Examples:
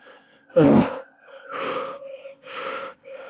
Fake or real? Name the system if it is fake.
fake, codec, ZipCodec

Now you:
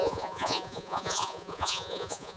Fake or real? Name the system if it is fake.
fake, vocoder, Vocos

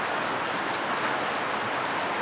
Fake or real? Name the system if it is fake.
real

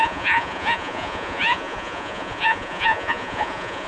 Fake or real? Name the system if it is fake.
fake, vocoder, Vocos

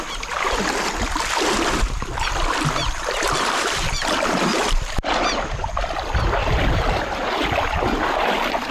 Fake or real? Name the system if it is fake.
real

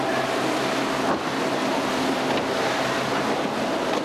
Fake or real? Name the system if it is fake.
real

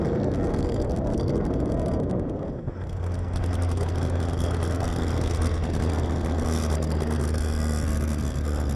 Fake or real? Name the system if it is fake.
fake, codec, SNAC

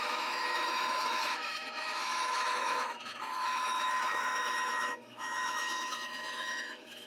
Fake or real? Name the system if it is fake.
fake, autoencoder, DAC-VAE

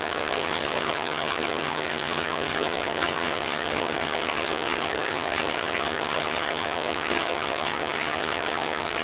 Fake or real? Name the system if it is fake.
fake, vocoder, HiFi-GAN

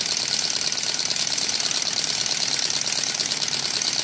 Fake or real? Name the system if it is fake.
real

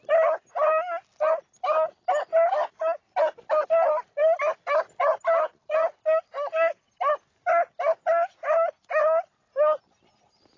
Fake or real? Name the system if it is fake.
real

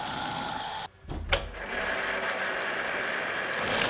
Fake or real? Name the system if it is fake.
real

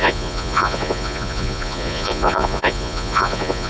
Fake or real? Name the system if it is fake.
fake, vocoder, Vocos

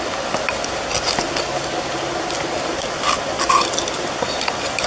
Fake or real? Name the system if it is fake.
real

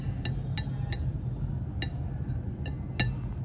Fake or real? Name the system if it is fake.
real